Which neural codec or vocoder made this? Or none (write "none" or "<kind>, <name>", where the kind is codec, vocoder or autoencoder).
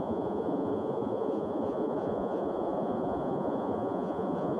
vocoder, Vocos